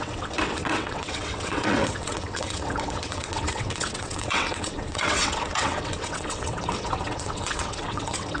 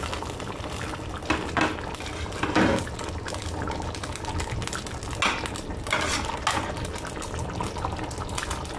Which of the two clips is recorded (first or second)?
second